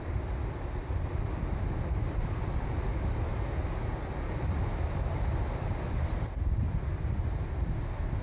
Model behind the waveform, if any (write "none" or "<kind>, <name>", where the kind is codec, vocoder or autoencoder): none